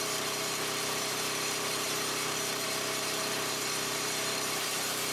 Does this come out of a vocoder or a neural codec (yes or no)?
yes